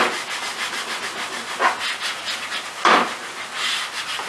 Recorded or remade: recorded